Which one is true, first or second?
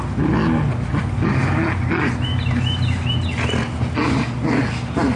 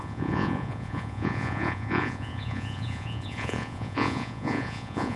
first